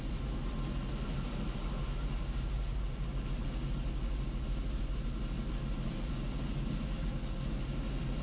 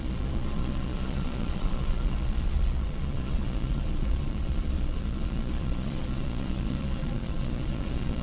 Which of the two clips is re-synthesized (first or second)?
second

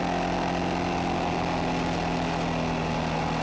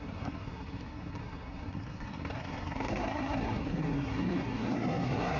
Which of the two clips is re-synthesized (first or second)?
second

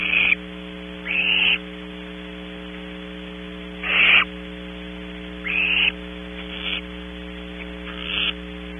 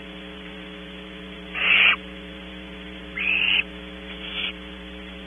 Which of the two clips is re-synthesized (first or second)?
second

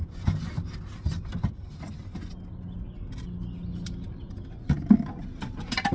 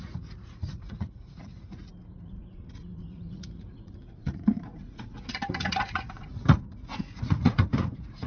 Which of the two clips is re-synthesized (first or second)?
second